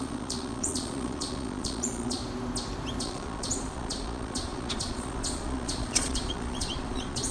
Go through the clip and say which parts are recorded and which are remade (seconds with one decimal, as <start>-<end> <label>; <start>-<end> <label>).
0.0-2.2 remade; 2.2-3.0 recorded; 3.0-7.3 remade

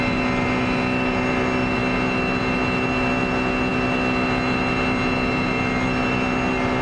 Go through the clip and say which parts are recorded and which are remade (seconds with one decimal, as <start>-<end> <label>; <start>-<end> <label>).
0.0-6.8 recorded

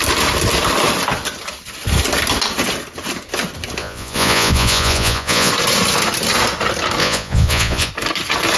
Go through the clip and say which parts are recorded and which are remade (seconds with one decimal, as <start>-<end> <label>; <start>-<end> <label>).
0.0-3.8 recorded; 3.8-5.5 remade; 5.5-7.0 recorded; 7.0-7.9 remade; 7.9-8.6 recorded

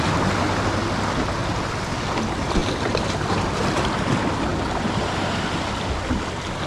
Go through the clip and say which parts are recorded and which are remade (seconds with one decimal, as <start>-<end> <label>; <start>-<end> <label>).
0.0-1.4 recorded; 1.4-2.0 remade; 2.0-6.7 recorded

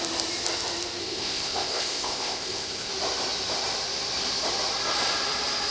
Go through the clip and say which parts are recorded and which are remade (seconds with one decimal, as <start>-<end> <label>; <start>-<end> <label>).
0.0-1.0 recorded; 1.0-2.9 remade; 2.9-5.7 recorded

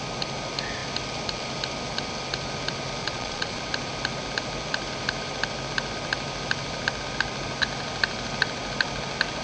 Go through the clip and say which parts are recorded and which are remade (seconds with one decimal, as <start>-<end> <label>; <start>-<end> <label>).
0.0-3.0 recorded; 3.0-3.6 remade; 3.6-9.4 recorded

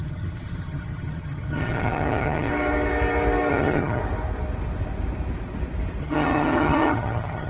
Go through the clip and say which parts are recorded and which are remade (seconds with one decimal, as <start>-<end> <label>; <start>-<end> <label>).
0.0-2.5 remade; 2.5-3.5 recorded; 3.5-4.0 remade; 4.0-6.0 recorded; 6.0-7.5 remade

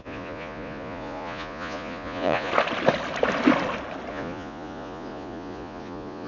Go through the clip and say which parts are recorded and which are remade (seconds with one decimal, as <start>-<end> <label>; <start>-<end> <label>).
0.0-2.5 remade; 2.5-4.1 recorded; 4.1-6.3 remade